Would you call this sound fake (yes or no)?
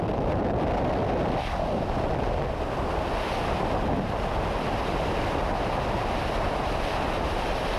no